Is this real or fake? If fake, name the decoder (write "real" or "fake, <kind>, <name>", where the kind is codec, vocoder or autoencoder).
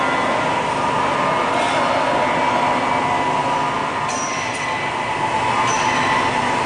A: real